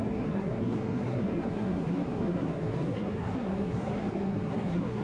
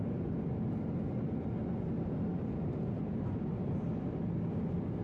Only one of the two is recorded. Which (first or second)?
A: second